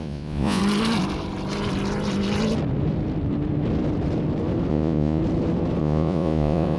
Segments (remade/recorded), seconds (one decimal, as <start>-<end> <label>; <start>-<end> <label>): 0.0-0.6 remade; 0.6-4.7 recorded; 4.7-5.2 remade; 5.2-5.8 recorded; 5.8-6.8 remade